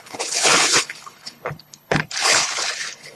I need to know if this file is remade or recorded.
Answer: remade